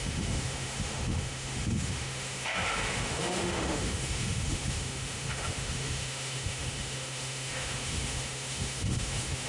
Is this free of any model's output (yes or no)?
no